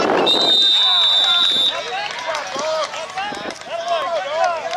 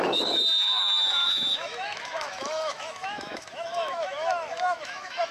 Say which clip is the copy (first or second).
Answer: second